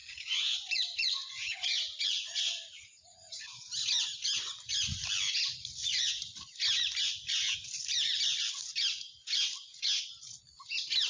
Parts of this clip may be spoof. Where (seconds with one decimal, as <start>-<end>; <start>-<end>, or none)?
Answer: 0.0-3.4